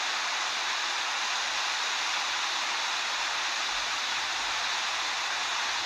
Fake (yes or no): no